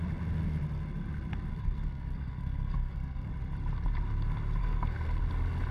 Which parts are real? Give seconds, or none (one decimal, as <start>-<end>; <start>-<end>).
0.0-1.5; 3.3-4.6; 5.2-5.7